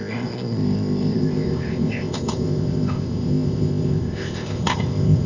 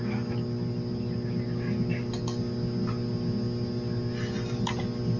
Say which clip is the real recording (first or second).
second